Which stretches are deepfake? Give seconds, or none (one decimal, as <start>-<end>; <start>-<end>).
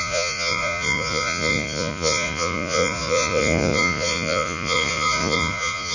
0.0-5.9